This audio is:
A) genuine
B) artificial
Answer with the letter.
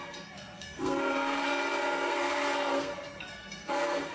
B